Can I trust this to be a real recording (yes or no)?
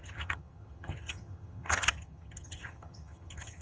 no